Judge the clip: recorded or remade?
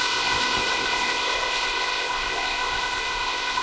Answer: remade